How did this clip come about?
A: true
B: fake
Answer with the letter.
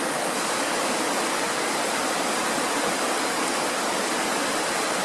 A